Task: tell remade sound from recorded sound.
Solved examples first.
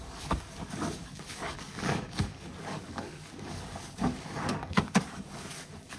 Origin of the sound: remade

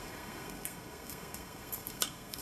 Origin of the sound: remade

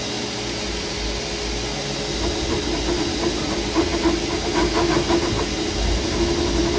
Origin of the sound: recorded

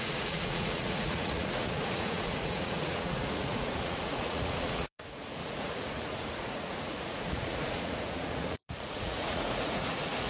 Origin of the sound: remade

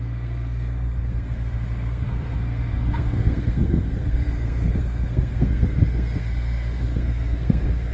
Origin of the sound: remade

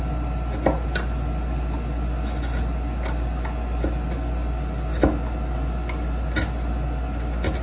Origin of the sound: recorded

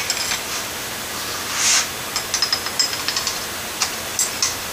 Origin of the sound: recorded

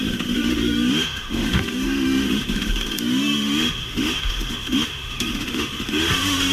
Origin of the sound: remade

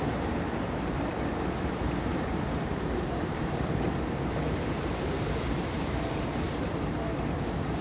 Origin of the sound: remade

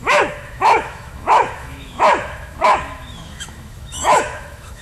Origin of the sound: remade